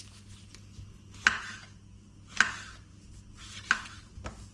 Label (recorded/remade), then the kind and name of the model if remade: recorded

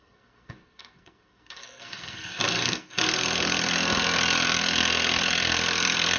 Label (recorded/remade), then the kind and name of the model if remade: remade, codec, SNAC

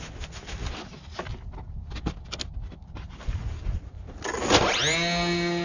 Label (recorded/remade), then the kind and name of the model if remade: recorded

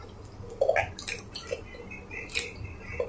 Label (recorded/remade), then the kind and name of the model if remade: recorded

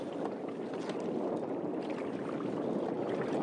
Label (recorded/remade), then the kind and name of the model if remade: recorded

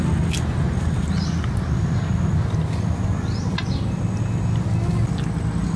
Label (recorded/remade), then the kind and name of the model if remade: recorded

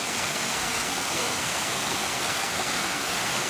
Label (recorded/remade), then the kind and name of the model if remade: remade, codec, SNAC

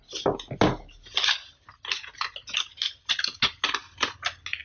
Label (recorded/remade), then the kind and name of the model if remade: recorded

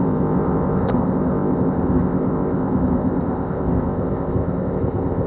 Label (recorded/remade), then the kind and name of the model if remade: remade, codec, ZipCodec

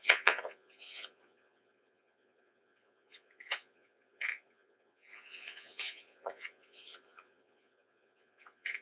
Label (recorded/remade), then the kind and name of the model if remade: remade, vocoder, Vocos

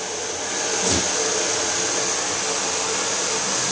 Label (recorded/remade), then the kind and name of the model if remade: recorded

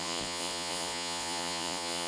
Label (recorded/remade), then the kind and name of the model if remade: remade, vocoder, Vocos